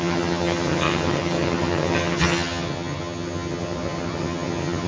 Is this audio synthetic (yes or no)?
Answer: yes